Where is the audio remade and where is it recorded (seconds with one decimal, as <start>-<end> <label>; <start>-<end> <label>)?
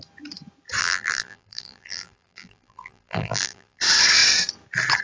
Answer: 0.0-0.8 recorded; 0.8-3.8 remade; 3.8-5.0 recorded